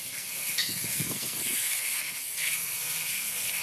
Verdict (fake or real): fake